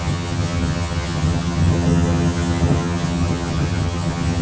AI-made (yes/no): yes